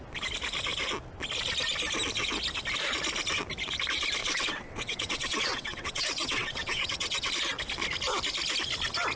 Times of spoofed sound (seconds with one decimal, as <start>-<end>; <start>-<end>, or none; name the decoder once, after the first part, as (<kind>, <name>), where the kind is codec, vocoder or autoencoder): 4.2-7.3 (vocoder, WaveNeXt)

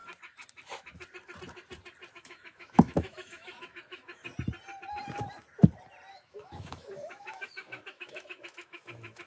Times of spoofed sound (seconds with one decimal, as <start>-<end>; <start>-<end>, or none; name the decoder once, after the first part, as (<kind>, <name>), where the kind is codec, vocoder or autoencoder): 2.1-4.2 (autoencoder, DAC-VAE); 6.1-9.3